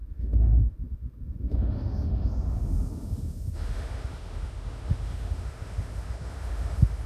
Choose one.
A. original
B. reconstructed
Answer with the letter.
B